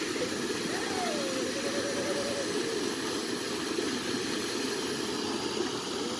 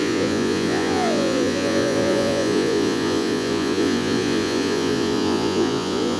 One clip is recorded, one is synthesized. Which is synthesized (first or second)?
second